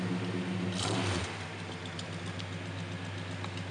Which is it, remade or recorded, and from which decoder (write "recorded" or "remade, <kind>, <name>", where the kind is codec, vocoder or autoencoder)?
recorded